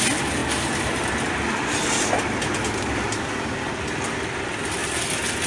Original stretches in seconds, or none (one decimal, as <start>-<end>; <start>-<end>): 0.0-5.5